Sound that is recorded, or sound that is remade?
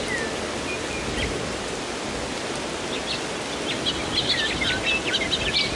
recorded